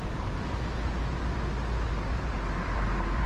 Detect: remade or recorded recorded